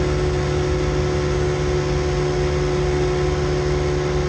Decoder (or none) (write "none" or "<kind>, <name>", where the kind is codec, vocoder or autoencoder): none